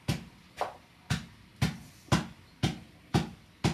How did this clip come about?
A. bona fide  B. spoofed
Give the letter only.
A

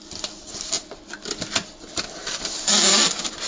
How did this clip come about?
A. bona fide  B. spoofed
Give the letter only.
A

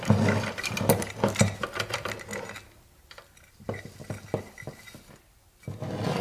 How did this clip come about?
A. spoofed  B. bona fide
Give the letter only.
B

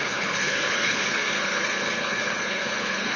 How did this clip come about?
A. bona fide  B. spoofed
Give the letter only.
B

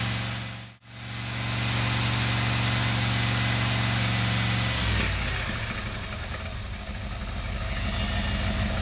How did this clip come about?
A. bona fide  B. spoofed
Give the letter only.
A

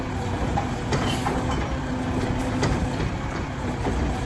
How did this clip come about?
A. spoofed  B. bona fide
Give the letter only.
A